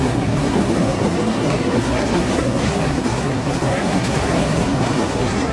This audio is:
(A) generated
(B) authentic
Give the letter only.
A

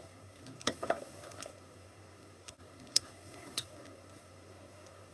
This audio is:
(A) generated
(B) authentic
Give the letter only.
A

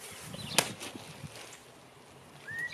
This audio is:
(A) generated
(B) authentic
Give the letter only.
B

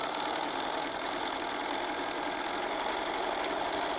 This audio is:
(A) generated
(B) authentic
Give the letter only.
B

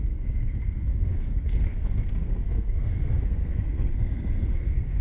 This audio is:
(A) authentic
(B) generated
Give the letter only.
B